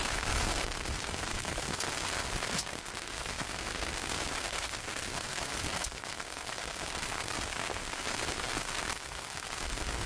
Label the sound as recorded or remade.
remade